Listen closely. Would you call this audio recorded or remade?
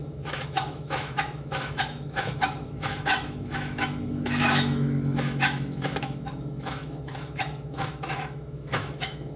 remade